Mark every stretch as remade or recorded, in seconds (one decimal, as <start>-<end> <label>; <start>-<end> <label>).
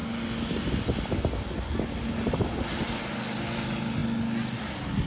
0.0-5.1 recorded